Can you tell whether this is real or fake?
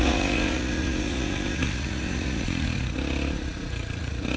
fake